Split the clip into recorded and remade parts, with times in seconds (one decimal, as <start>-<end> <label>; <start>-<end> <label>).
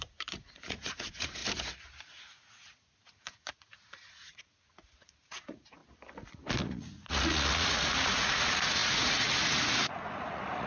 0.0-1.4 remade; 1.4-2.0 recorded; 2.0-5.8 remade; 5.8-6.6 recorded; 6.6-10.7 remade